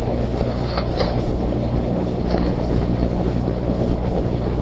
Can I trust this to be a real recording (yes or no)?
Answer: no